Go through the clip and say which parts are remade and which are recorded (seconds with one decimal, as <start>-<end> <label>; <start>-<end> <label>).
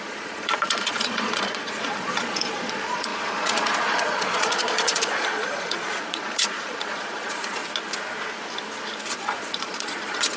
0.0-7.6 remade; 7.6-9.1 recorded; 9.1-10.4 remade